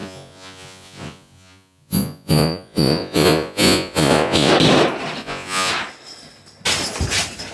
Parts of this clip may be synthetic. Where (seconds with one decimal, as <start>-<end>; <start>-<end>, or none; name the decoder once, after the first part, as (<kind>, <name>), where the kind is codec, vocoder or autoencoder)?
0.0-4.5 (vocoder, Vocos); 5.2-5.7